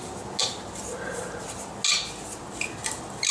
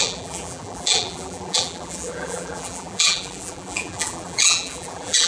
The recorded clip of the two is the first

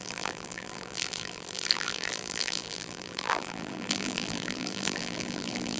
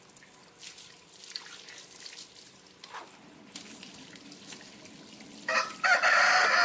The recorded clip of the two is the second